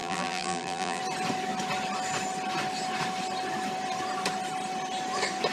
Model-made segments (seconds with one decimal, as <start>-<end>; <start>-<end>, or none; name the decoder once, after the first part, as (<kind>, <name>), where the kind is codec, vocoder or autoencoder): 0.0-1.0 (vocoder, BigVGAN v2)